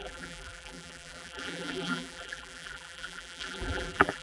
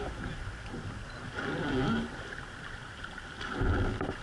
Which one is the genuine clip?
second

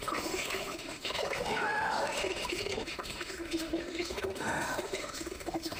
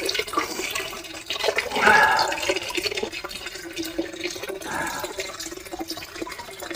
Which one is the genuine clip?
second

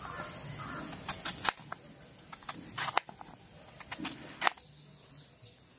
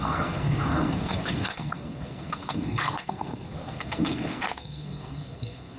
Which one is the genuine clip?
first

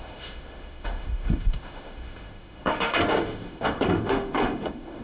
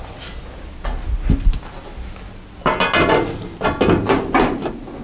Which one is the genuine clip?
second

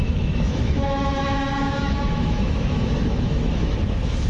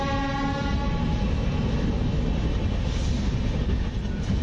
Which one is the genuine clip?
second